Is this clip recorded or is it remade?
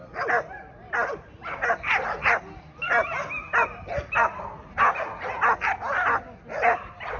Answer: recorded